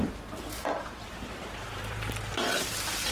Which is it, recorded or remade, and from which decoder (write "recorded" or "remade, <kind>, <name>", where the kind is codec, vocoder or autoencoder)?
remade, vocoder, BigVGAN v2